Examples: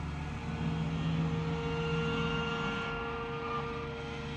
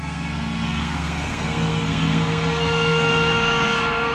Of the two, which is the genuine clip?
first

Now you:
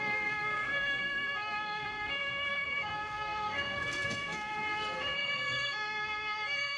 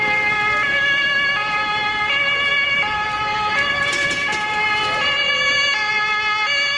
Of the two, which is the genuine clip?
second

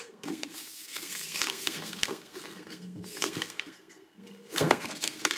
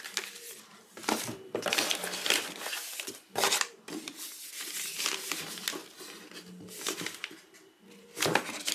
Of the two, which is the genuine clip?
second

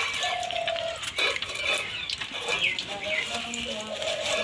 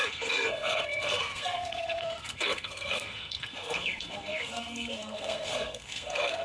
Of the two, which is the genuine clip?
first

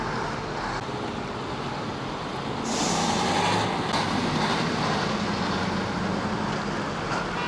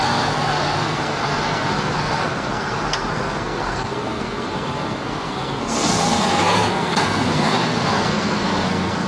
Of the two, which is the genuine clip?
first